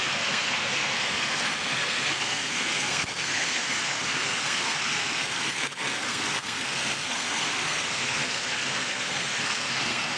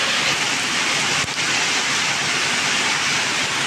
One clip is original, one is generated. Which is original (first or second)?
second